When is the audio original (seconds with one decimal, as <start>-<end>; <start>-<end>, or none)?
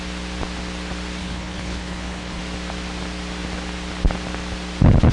0.0-1.2; 2.4-5.1